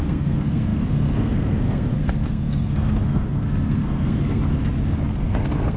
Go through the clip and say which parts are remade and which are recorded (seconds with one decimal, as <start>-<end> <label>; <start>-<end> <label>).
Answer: 0.0-4.4 remade; 4.4-5.1 recorded; 5.1-5.8 remade